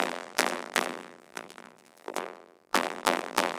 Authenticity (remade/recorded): remade